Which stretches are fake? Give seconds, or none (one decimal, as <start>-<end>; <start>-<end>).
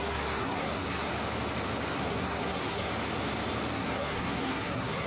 0.0-1.1; 1.9-2.9; 3.7-5.1